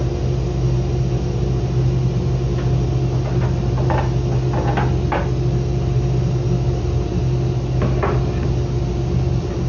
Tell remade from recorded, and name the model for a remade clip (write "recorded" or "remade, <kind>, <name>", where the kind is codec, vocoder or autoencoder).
recorded